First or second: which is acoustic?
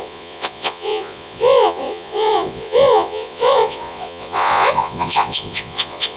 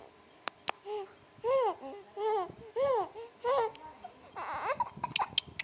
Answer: second